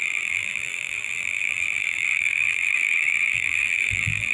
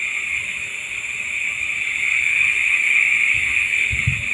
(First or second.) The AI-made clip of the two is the first